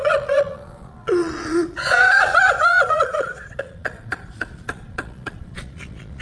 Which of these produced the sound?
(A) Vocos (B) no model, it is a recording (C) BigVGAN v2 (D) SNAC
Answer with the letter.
A